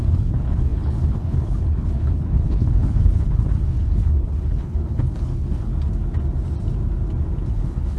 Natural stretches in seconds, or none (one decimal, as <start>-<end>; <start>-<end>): 5.7-7.5